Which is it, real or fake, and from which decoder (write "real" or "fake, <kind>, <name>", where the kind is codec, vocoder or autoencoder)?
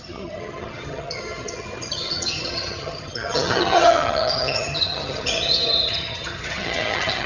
fake, vocoder, HiFi-GAN